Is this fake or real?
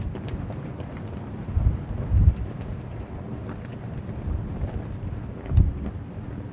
real